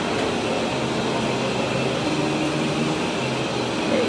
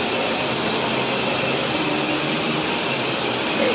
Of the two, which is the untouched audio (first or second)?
first